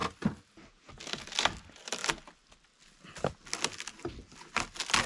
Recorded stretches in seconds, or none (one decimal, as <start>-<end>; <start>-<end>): 0.0-5.1